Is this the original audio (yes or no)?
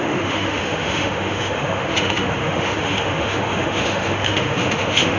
no